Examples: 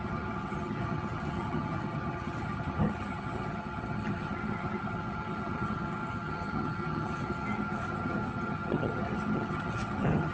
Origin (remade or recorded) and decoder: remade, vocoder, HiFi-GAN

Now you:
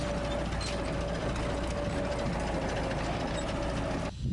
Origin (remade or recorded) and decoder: recorded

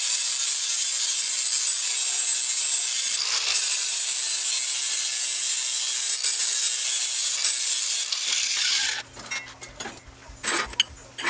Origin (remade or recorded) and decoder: recorded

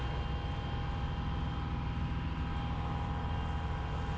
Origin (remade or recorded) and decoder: recorded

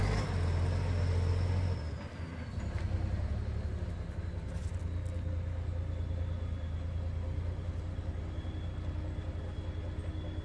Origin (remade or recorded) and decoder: recorded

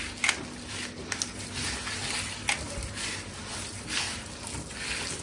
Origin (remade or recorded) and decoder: recorded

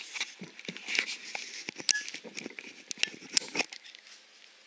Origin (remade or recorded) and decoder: recorded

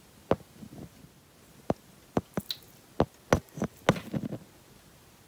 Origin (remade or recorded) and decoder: recorded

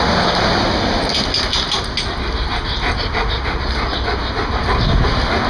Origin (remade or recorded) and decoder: recorded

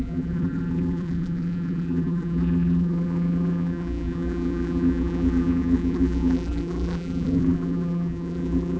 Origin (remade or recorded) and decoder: remade, vocoder, BigVGAN v2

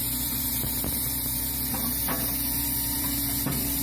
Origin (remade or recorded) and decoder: remade, vocoder, BigVGAN v2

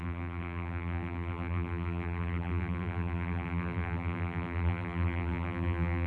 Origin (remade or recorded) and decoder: remade, vocoder, BigVGAN v2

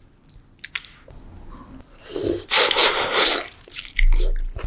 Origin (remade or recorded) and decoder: recorded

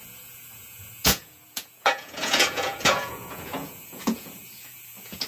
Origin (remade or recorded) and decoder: remade, vocoder, Vocos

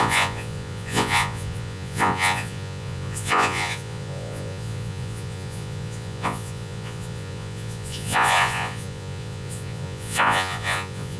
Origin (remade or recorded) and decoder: remade, vocoder, Vocos